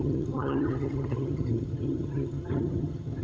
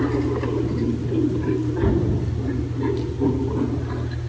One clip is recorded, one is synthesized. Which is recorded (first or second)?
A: second